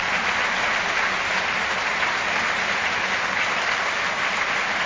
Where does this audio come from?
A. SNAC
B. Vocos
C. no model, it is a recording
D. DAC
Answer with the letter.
C